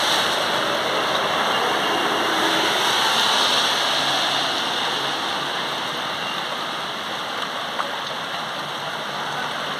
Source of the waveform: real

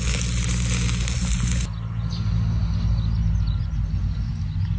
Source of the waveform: real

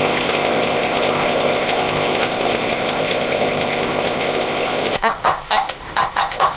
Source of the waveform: fake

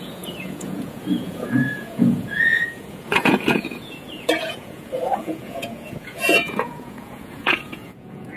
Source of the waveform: fake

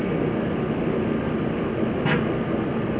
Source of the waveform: real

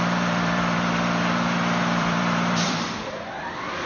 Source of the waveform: fake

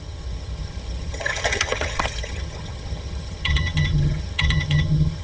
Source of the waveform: fake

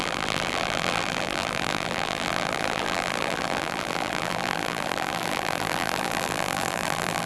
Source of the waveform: fake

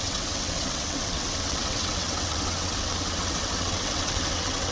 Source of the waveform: fake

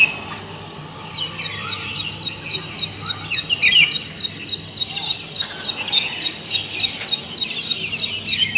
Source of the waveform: real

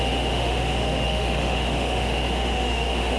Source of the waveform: fake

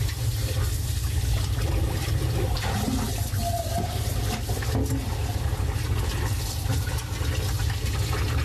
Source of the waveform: real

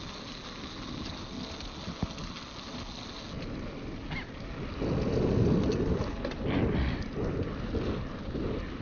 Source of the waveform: real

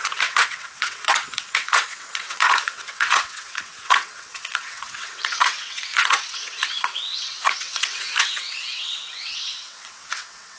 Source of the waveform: fake